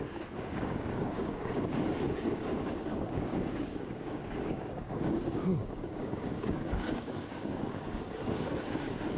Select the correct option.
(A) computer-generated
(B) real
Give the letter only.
A